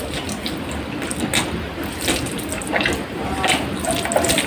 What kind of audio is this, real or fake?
real